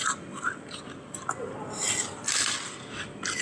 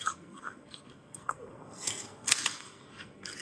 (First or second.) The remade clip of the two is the second